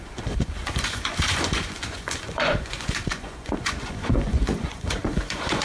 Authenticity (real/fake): fake